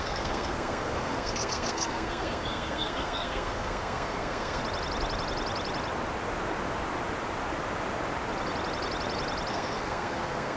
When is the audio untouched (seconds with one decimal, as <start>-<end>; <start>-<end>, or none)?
4.6-9.5